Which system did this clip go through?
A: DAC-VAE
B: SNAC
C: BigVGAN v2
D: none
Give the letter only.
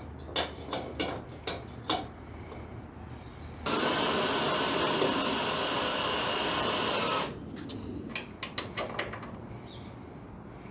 D